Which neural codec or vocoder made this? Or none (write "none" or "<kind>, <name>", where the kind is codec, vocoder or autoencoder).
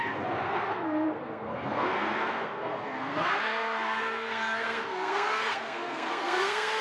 codec, SNAC